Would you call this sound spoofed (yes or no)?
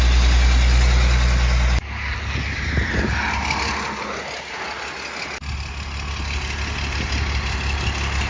no